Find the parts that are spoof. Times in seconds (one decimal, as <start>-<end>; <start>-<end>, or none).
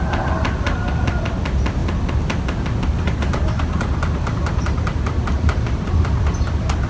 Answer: none